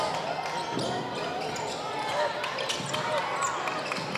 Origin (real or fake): real